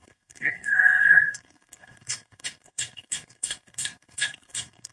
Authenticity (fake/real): fake